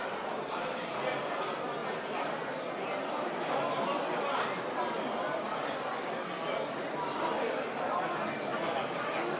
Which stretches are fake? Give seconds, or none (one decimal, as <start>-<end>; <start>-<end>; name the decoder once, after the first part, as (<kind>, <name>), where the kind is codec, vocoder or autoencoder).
none